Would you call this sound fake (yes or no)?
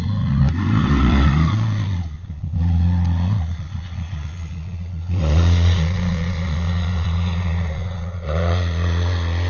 yes